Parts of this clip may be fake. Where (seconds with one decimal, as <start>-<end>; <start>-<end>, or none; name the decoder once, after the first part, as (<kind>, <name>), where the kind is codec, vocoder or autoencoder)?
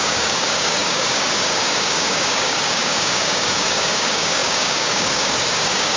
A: 0.0-6.0 (codec, DAC)